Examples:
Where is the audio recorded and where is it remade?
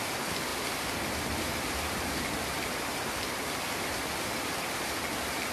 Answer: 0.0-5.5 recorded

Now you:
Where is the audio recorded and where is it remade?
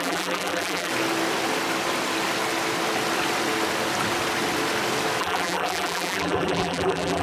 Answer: 0.0-0.9 remade; 0.9-5.2 recorded; 5.2-7.2 remade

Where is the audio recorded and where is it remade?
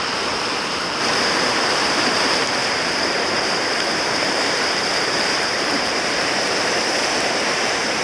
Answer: 0.0-8.0 remade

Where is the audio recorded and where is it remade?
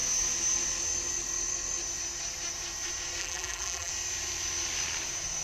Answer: 0.0-3.2 recorded; 3.2-3.9 remade; 3.9-5.4 recorded